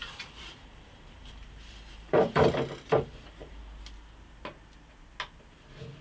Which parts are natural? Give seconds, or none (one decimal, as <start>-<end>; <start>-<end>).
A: 3.6-6.0